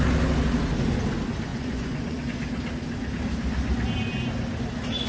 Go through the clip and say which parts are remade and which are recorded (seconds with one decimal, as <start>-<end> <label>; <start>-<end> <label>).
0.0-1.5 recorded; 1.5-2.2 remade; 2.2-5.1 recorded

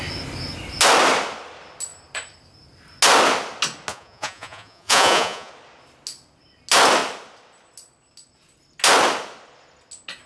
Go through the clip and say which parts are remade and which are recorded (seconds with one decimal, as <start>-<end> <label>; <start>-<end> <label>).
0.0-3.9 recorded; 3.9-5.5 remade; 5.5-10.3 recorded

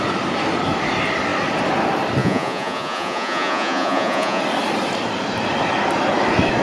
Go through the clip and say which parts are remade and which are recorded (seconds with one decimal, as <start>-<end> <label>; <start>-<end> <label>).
0.0-2.2 recorded; 2.2-4.4 remade; 4.4-6.6 recorded

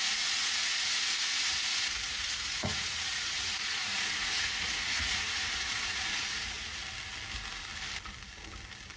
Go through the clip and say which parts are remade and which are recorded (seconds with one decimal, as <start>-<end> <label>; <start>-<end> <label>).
0.0-6.8 remade; 6.8-9.0 recorded

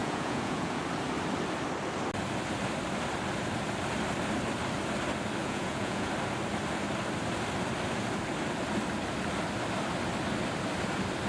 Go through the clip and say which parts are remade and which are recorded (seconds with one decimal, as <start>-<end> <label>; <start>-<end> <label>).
0.0-0.8 remade; 0.8-5.4 recorded; 5.4-6.1 remade; 6.1-11.3 recorded

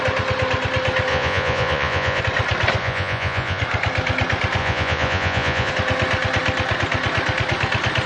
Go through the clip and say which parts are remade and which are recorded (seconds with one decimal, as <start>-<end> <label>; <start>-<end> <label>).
0.0-1.1 recorded; 1.1-2.2 remade; 2.2-2.8 recorded; 2.8-3.6 remade; 3.6-4.6 recorded; 4.6-5.7 remade; 5.7-8.1 recorded

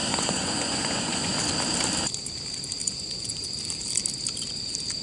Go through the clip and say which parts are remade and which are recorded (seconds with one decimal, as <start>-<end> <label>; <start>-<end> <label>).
0.0-1.3 remade; 1.3-2.8 recorded; 2.8-3.3 remade; 3.3-5.0 recorded